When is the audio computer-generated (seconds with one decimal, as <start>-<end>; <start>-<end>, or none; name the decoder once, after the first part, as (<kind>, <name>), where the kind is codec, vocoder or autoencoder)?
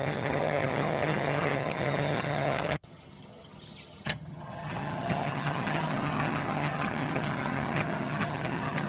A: 0.0-8.9 (vocoder, HiFi-GAN)